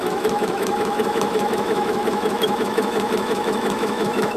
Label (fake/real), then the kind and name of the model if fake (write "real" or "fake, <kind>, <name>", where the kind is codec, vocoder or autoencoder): fake, autoencoder, DAC-VAE